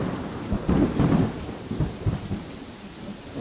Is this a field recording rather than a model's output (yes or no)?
no